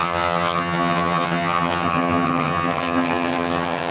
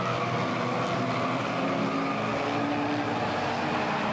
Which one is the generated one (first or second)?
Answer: first